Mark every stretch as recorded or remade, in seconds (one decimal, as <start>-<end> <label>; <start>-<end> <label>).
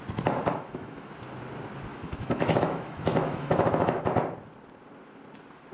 0.0-0.5 recorded; 0.5-1.1 remade; 1.1-1.9 recorded; 1.9-4.0 remade; 4.0-5.7 recorded